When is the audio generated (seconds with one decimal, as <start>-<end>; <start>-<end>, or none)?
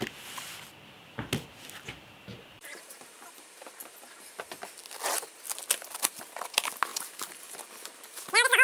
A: 2.3-4.3; 6.9-7.6